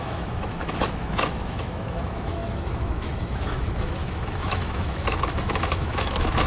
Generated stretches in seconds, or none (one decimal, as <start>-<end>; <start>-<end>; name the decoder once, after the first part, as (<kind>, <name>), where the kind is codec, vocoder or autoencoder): 0.0-6.5 (autoencoder, DAC-VAE)